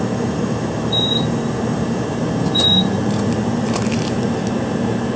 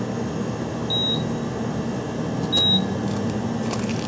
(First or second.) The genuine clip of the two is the second